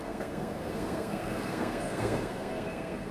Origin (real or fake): fake